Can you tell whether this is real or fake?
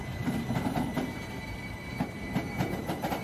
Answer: real